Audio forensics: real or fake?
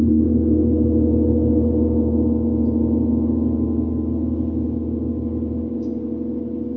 real